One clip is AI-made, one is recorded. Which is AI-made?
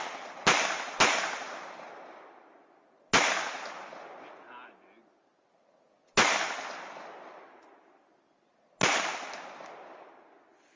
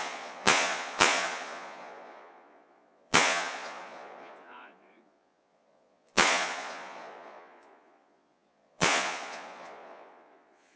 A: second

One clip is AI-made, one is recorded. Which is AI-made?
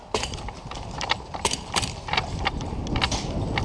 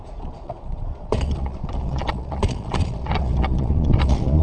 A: second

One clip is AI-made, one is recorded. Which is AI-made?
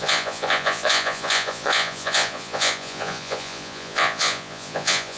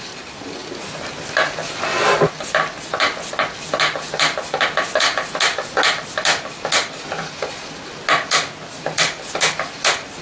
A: first